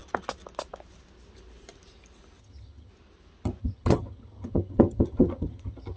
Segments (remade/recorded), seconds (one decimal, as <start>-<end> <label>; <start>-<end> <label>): 0.0-2.4 recorded; 2.4-2.9 remade; 2.9-3.6 recorded; 3.6-6.0 remade